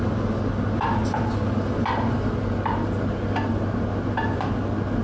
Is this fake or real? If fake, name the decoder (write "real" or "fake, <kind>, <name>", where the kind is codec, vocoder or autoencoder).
real